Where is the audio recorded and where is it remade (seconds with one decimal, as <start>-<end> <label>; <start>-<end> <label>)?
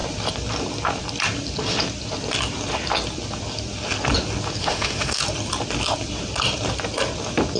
0.0-4.6 recorded; 4.6-5.2 remade; 5.2-7.6 recorded